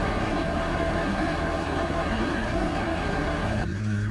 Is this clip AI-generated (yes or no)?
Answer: yes